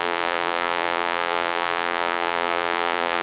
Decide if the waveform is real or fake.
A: fake